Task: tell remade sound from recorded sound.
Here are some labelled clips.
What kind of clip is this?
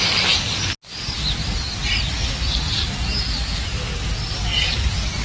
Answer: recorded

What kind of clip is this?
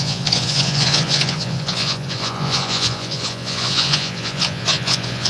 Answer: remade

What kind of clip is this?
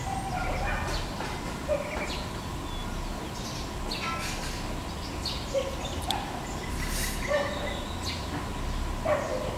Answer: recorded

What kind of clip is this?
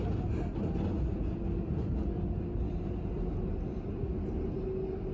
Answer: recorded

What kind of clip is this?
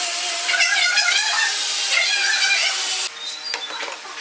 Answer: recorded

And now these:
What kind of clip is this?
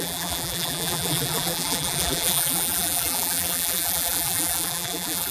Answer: remade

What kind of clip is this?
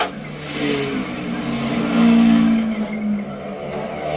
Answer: recorded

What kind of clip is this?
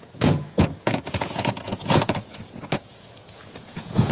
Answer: remade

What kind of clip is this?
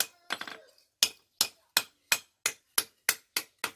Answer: recorded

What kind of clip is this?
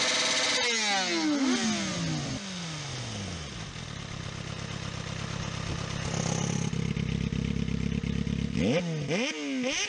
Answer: recorded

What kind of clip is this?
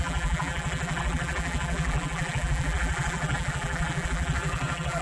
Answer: remade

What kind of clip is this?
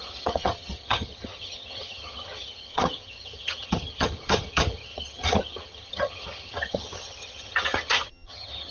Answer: remade